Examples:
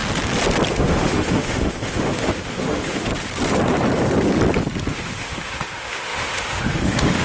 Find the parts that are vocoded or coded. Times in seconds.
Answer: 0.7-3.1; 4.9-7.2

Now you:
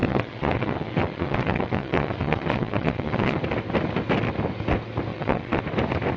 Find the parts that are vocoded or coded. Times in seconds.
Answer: 0.0-3.4; 5.1-5.6

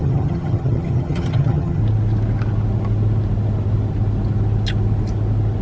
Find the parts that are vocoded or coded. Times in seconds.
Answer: 0.0-1.8

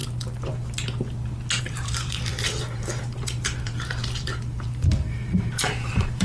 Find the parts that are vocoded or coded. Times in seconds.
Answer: 1.6-6.2

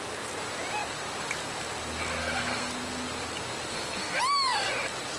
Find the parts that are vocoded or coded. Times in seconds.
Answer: 2.2-2.7; 3.7-4.2

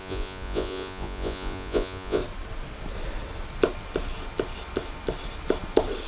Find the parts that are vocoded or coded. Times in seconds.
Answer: 0.0-2.2

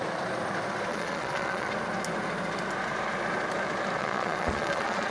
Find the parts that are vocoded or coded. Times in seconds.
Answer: 0.9-1.7; 4.0-5.1

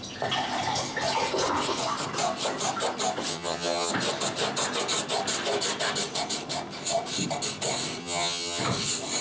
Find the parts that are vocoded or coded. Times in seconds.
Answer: 3.3-3.9; 8.0-8.6